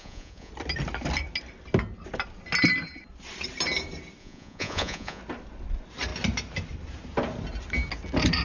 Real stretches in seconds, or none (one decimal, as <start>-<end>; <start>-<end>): 0.5-4.2; 5.2-8.4